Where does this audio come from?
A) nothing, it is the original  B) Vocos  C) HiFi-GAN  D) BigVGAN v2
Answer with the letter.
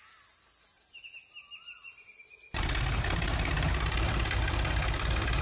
A